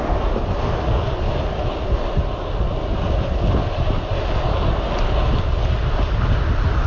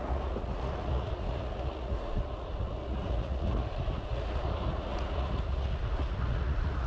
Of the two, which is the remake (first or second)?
second